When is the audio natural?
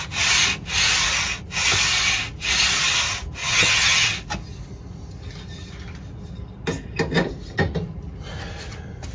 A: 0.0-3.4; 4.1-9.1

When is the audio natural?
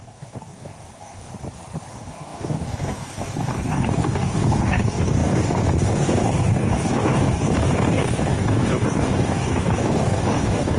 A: 1.3-1.9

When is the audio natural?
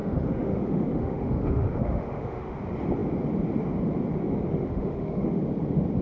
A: 2.6-4.5; 5.4-6.0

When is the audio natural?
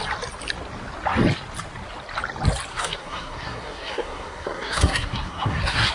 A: 0.0-2.7